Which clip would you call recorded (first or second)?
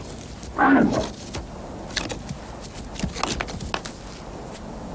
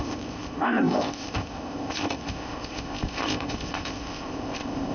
first